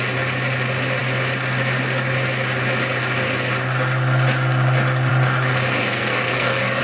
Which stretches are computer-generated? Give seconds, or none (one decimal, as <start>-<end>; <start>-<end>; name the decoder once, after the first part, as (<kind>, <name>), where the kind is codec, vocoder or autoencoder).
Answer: 5.8-6.8 (codec, SNAC)